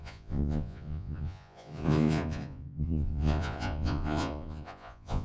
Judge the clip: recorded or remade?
remade